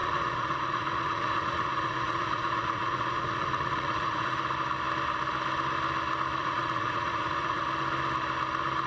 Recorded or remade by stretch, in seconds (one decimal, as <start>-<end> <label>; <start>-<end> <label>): 0.0-4.5 remade; 4.5-6.4 recorded; 6.4-7.6 remade; 7.6-8.9 recorded